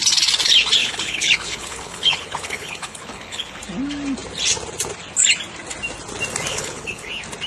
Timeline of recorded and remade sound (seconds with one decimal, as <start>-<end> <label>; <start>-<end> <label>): 0.0-0.8 recorded; 0.8-3.6 remade; 3.6-6.5 recorded; 6.5-7.1 remade; 7.1-7.5 recorded